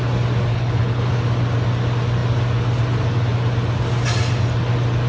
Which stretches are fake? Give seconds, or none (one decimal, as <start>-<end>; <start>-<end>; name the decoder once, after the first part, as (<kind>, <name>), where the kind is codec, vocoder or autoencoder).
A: 0.5-1.1 (codec, HILCodec)